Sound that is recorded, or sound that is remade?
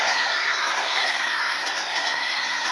remade